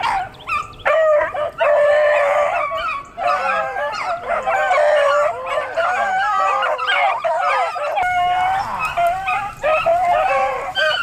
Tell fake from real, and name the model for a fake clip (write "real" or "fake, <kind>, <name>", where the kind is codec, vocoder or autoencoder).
fake, vocoder, BigVGAN v2